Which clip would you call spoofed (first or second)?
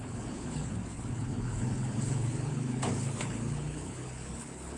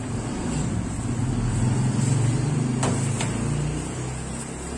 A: first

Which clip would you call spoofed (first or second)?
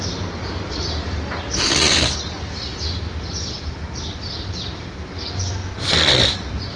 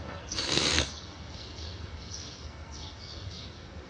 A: second